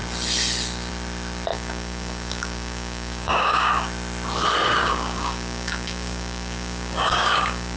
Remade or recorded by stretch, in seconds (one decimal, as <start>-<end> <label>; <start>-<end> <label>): 0.0-1.5 recorded; 1.5-3.7 remade; 3.7-4.8 recorded; 4.8-7.8 remade

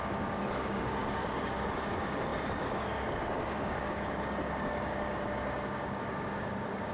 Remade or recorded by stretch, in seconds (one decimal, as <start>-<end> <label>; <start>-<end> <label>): 0.0-6.9 remade

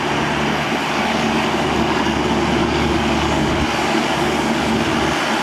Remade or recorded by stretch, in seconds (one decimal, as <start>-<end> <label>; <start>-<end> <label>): 0.0-0.8 recorded; 0.8-2.2 remade; 2.2-2.6 recorded; 2.6-4.7 remade; 4.7-5.4 recorded

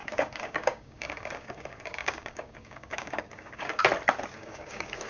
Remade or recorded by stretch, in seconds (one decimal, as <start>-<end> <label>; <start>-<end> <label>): 0.0-3.8 remade; 3.8-4.3 recorded; 4.3-5.1 remade

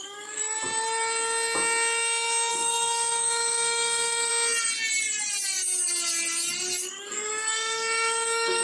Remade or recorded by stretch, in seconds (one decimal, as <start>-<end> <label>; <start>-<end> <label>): 0.0-0.4 remade; 0.4-2.5 recorded; 2.5-4.3 remade; 4.3-6.8 recorded; 6.8-8.6 remade

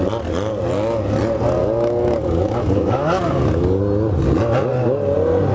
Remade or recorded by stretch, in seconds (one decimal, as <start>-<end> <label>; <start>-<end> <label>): 0.0-1.6 recorded; 1.6-3.8 remade; 3.8-5.5 recorded

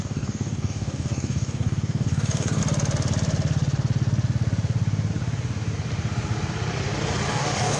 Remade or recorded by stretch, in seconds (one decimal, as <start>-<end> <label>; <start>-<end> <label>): 0.0-2.6 remade; 2.6-7.3 recorded; 7.3-7.8 remade